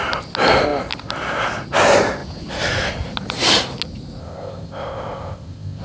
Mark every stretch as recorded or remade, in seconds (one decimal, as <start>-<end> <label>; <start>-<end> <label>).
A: 0.0-4.2 recorded; 4.2-5.8 remade

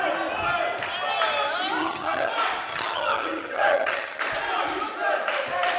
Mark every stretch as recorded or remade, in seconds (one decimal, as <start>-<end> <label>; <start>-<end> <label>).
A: 0.0-1.8 recorded; 1.8-2.3 remade; 2.3-2.7 recorded; 2.7-4.2 remade; 4.2-5.8 recorded

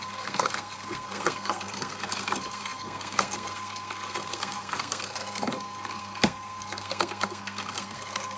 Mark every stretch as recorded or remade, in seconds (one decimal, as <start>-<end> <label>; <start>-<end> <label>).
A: 0.0-8.4 remade

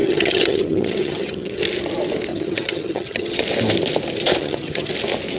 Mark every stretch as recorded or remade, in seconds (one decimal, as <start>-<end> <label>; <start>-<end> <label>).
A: 0.0-1.6 remade; 1.6-2.3 recorded; 2.3-3.4 remade; 3.4-4.4 recorded; 4.4-4.9 remade; 4.9-5.4 recorded